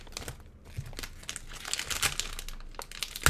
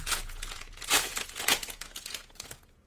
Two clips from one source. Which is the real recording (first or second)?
first